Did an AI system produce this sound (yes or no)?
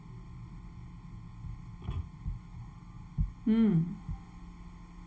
no